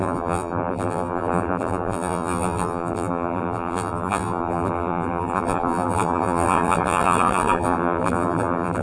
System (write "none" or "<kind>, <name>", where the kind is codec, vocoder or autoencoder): vocoder, BigVGAN v2